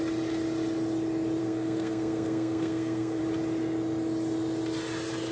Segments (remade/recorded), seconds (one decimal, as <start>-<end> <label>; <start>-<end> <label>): 0.0-1.4 recorded; 1.4-3.2 remade; 3.2-5.3 recorded